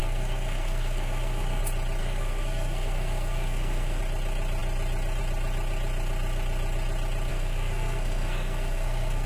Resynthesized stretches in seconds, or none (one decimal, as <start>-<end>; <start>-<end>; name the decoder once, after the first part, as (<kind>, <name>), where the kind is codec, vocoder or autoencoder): 0.0-1.6 (codec, SNAC); 2.0-4.0; 7.3-9.3